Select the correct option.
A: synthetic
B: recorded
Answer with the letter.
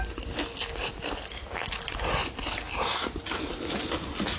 B